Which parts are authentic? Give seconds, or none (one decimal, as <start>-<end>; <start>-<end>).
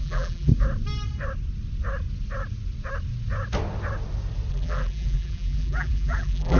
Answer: 0.5-4.5